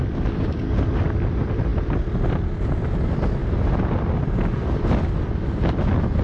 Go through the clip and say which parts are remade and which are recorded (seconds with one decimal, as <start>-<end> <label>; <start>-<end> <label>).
0.0-6.2 recorded